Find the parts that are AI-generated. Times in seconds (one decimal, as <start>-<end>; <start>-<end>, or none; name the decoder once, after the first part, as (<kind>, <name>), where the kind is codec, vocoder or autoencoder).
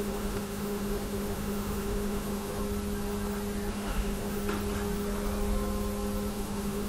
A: 0.0-2.6 (autoencoder, DAC-VAE); 3.7-4.4; 6.3-6.9